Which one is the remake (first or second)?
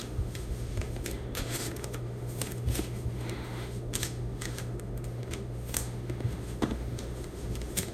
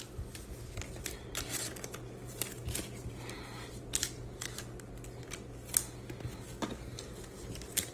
first